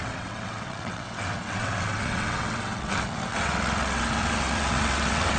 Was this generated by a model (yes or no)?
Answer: yes